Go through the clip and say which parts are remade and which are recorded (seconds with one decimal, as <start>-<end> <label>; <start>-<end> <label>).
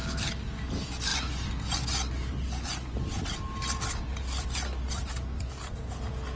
0.0-6.4 recorded